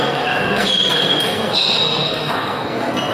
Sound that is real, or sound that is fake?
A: fake